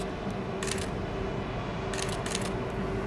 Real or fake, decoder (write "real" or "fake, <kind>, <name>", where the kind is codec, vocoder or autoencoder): real